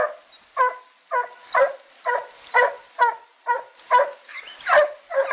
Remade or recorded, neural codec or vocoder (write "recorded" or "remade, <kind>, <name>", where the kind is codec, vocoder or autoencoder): recorded